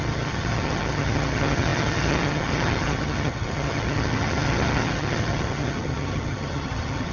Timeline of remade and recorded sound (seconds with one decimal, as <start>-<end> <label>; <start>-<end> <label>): 0.0-7.1 remade